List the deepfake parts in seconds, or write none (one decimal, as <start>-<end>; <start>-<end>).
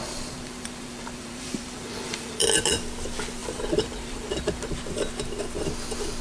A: 0.0-2.6; 3.4-4.8